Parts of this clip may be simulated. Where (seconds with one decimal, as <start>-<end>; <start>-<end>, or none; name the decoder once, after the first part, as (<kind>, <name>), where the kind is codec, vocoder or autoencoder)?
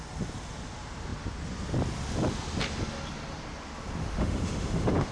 4.0-5.1 (autoencoder, DAC-VAE)